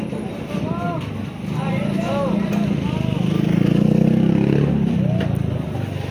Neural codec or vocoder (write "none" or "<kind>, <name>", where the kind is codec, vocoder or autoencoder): none